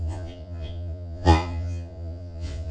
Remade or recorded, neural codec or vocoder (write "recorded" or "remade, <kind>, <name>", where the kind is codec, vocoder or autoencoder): remade, vocoder, Vocos